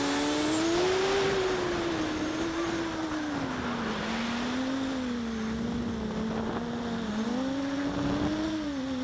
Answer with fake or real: real